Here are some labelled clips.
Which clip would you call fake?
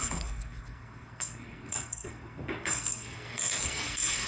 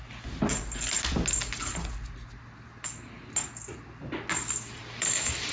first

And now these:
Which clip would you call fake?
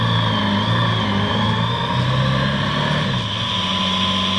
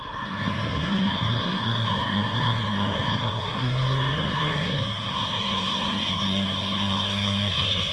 second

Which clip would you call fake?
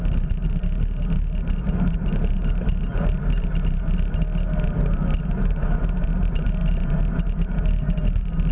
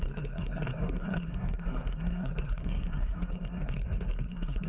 second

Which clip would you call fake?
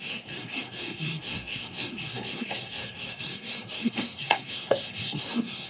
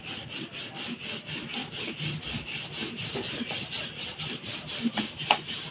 first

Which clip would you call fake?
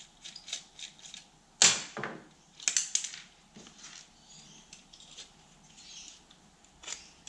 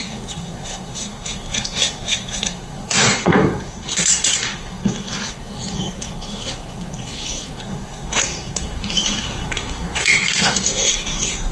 second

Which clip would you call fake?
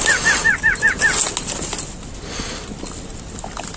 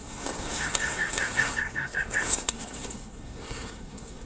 second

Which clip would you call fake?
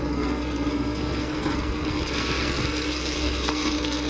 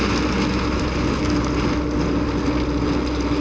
first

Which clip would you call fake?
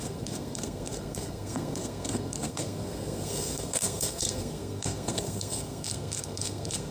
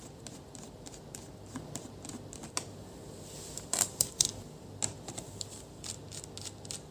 first